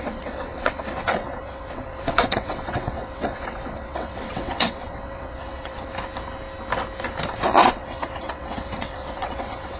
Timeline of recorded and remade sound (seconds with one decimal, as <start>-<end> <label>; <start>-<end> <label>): 0.0-5.9 remade; 5.9-7.7 recorded; 7.7-9.8 remade